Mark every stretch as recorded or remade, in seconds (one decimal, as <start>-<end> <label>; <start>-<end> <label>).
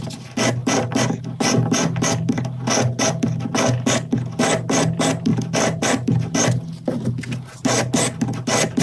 0.0-8.8 recorded